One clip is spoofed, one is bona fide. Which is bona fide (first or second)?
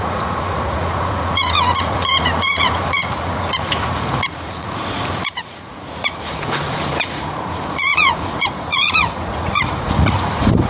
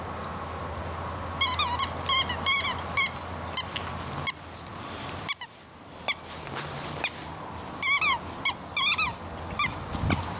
second